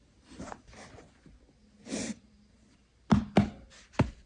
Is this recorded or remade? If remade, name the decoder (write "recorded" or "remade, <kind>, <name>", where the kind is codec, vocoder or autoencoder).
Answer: recorded